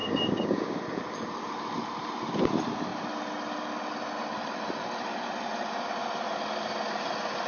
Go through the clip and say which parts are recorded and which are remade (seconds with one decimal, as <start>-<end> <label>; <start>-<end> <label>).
0.0-0.8 remade; 0.8-7.5 recorded